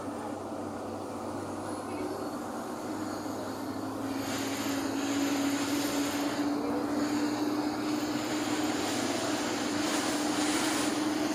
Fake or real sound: real